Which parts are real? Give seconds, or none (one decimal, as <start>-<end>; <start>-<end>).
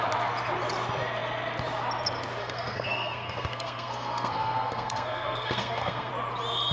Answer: 0.0-2.4; 6.1-6.7